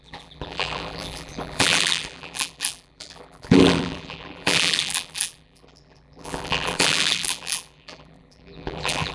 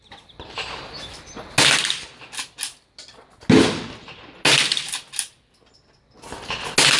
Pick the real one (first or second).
second